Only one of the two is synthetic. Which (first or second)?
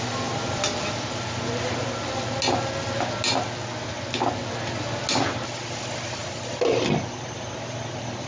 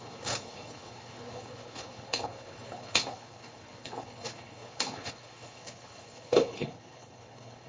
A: second